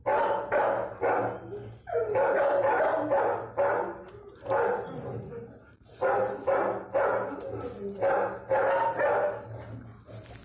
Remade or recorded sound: recorded